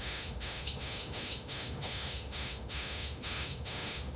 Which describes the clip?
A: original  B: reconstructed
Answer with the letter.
B